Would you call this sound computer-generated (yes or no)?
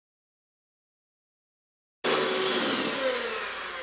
no